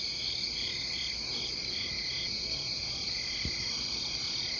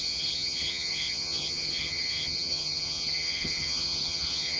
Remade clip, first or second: second